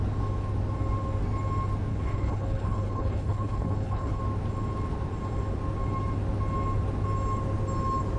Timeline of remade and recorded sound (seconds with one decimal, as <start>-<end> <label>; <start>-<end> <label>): 0.0-1.9 recorded; 1.9-4.2 remade; 4.2-8.2 recorded